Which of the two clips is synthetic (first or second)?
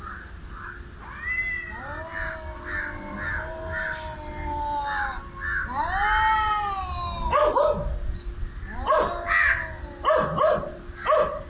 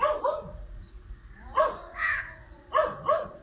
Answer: second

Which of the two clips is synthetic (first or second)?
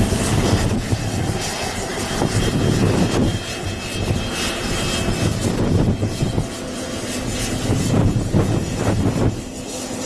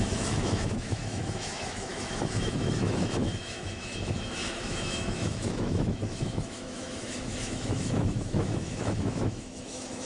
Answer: second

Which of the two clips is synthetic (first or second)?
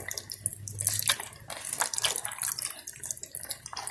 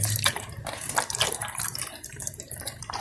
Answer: second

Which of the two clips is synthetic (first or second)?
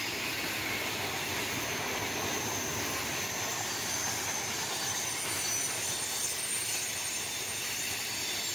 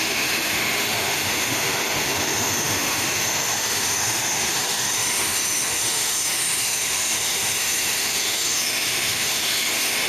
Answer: second